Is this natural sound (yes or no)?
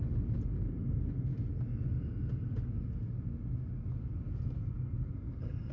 yes